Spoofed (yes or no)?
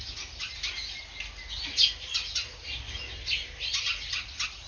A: no